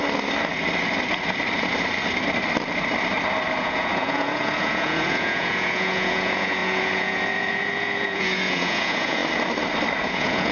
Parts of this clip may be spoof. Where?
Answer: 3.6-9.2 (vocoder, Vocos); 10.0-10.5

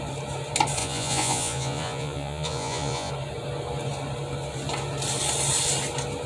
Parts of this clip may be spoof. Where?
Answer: 0.8-3.1 (vocoder, Vocos)

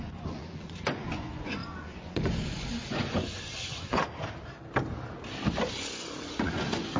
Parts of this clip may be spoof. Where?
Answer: 0.0-4.0 (vocoder, Vocos); 5.6-7.0